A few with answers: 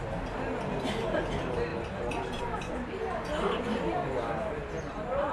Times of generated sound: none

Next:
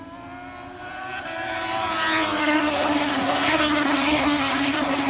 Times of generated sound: 2.4-5.1

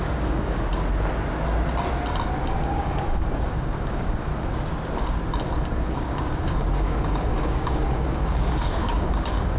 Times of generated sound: 0.0-0.7; 2.6-4.3; 5.7-9.6

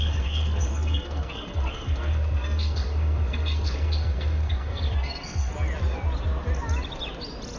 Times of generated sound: 0.0-5.5

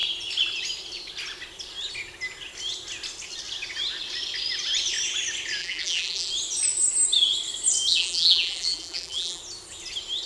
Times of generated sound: 5.6-6.3; 7.9-9.4

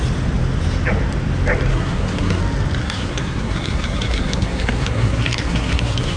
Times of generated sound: 1.7-2.4; 2.8-6.2

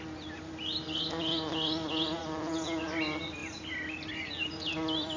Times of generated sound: none